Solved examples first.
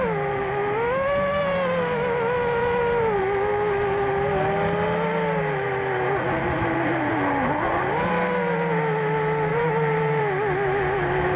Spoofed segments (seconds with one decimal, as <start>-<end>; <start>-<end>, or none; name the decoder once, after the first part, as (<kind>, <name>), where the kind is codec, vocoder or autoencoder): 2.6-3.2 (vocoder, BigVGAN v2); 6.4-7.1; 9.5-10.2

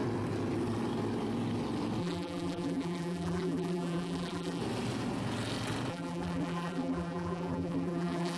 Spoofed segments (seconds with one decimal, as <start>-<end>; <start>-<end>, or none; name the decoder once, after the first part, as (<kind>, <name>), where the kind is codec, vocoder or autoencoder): 2.0-4.6 (vocoder, BigVGAN v2); 5.9-8.4

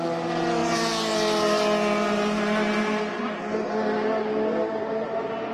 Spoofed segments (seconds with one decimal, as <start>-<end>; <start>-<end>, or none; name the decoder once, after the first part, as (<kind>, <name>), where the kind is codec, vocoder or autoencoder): none

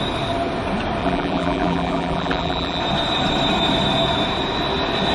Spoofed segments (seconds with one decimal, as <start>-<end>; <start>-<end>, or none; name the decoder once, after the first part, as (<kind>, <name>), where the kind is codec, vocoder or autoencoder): 1.0-2.8 (vocoder, BigVGAN v2)

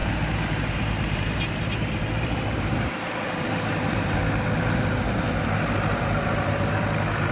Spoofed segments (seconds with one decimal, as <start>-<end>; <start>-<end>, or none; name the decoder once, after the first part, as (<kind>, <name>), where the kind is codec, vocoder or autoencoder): 0.0-4.4 (vocoder, BigVGAN v2)

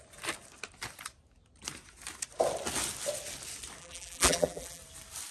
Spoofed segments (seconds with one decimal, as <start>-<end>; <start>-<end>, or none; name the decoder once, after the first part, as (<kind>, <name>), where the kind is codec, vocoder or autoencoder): 3.8-4.8 (vocoder, BigVGAN v2)

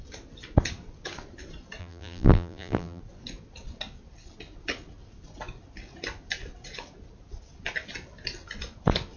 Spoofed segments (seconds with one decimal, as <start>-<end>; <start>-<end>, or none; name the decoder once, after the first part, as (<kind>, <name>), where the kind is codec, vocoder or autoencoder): 1.8-3.0 (vocoder, BigVGAN v2)